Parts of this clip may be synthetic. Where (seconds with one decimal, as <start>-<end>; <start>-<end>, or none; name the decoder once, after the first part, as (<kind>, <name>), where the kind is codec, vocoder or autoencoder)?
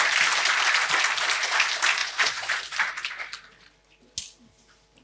2.0-2.6 (vocoder, Vocos)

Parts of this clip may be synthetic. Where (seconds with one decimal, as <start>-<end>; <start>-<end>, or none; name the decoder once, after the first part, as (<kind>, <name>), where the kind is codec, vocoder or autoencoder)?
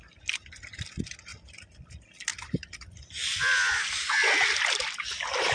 none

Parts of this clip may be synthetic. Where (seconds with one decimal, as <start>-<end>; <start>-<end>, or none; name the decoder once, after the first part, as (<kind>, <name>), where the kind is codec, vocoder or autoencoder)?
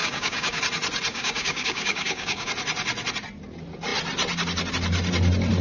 0.0-0.6 (codec, DAC); 1.1-2.5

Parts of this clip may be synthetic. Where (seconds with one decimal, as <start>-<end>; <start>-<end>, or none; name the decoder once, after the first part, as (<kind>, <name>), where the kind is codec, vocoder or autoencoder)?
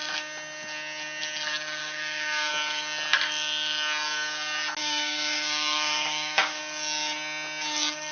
1.8-2.5 (codec, DAC); 4.8-6.6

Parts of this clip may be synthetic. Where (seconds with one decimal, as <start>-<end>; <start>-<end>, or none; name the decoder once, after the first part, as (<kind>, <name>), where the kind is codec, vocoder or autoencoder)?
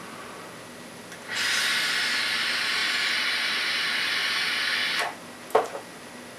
none